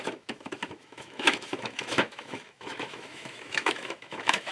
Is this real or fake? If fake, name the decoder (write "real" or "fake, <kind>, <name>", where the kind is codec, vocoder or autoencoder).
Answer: fake, autoencoder, DAC-VAE